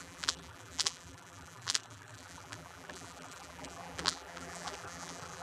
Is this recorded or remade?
remade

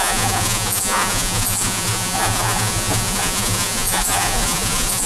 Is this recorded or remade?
remade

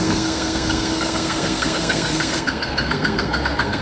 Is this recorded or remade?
remade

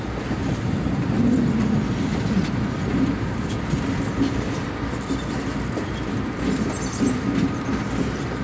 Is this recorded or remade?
recorded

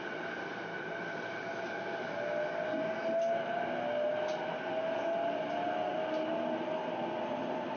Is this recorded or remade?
recorded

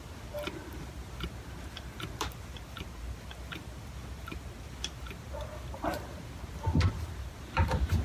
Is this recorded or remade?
recorded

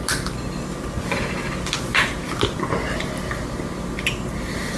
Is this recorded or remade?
recorded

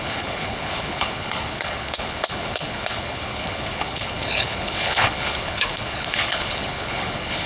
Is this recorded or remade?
remade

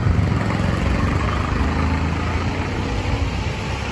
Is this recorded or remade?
recorded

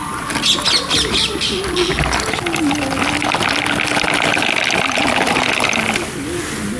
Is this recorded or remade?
recorded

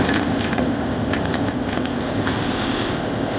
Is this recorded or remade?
remade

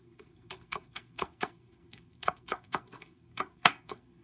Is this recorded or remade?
remade